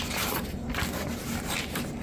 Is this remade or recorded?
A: recorded